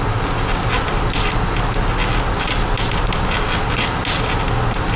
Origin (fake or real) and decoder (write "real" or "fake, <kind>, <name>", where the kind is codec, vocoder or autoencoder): real